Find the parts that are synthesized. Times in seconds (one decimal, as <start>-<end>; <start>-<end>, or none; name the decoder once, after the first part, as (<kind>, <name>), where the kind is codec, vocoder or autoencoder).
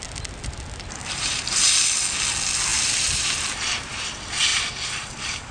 1.0-1.6 (vocoder, BigVGAN v2); 2.7-4.0; 4.5-5.5